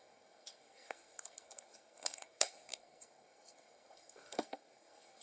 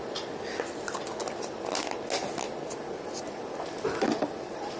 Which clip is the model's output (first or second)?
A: first